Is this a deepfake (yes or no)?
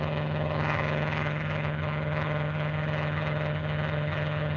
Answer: yes